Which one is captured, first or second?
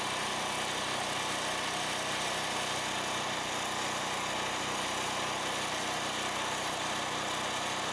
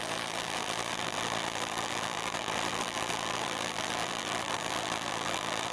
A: first